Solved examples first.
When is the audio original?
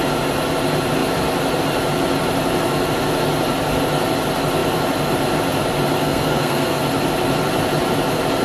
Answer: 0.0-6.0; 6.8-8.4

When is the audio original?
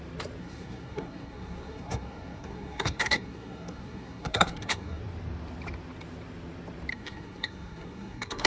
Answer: 0.0-0.4; 5.0-6.9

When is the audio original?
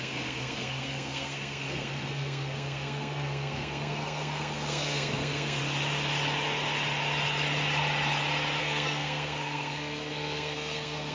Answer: 5.6-8.6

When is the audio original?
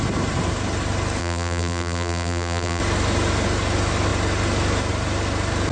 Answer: 0.0-1.2; 2.8-5.7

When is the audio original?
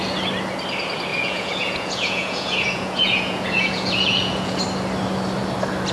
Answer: 0.0-1.1; 4.6-5.9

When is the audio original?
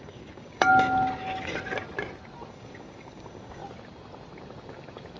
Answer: 0.7-2.5; 3.6-5.2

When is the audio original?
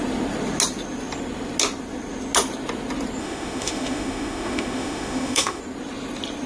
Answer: 0.0-3.2; 5.6-6.5